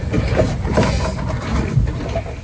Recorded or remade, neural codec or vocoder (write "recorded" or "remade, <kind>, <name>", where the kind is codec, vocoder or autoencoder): recorded